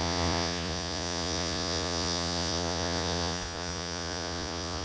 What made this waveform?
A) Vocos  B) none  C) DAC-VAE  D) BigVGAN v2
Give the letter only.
A